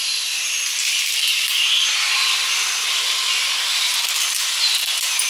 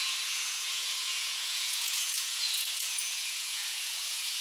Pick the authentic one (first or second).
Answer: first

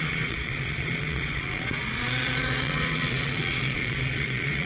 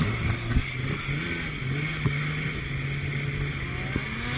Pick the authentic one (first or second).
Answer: second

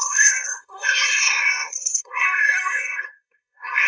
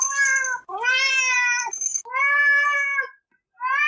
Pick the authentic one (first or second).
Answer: second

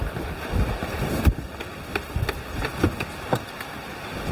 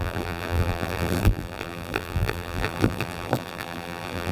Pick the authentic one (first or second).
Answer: first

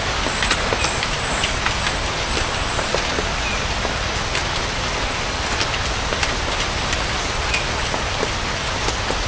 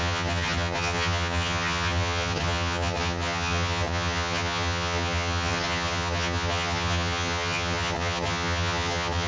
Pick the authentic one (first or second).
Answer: first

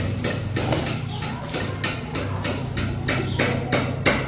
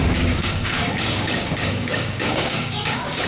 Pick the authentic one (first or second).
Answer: first